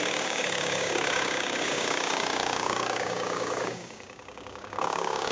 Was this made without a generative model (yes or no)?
no